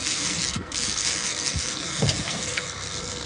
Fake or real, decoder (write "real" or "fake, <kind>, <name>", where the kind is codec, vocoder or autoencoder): fake, codec, SNAC